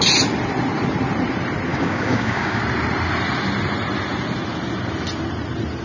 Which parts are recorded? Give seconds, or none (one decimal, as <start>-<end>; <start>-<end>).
0.0-1.7; 2.6-5.8